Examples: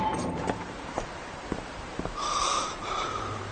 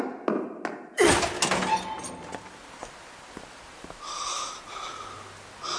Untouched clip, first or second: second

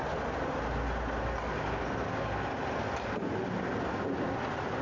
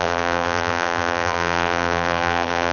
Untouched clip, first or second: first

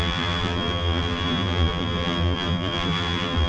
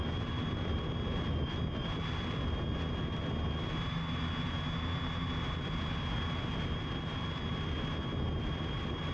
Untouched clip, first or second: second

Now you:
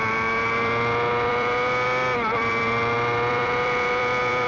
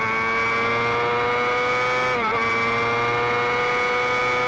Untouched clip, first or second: second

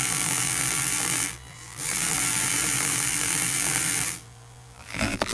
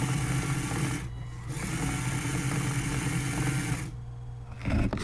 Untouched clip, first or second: second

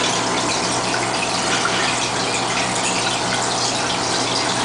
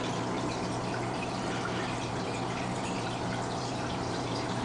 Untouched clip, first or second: first